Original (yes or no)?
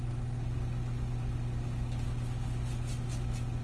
yes